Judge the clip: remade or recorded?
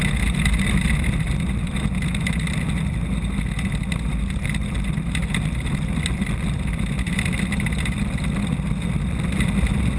recorded